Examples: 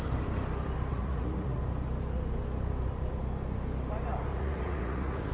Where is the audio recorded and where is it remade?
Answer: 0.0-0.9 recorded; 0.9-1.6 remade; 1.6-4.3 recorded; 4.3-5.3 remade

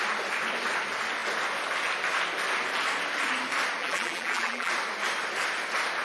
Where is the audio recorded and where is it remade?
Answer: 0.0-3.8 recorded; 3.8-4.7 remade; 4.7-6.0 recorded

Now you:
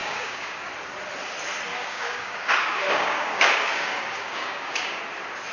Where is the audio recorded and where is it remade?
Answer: 0.0-0.7 remade; 0.7-1.7 recorded; 1.7-5.0 remade; 5.0-5.5 recorded